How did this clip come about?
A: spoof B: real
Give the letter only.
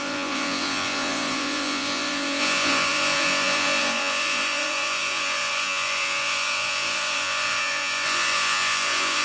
A